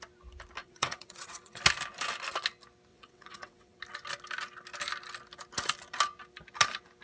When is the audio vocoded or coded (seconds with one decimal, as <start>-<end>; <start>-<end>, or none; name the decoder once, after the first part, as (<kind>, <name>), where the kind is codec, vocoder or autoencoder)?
0.6-1.6 (vocoder, WaveNeXt); 2.9-3.8